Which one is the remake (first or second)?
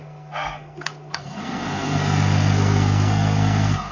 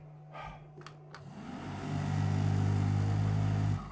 first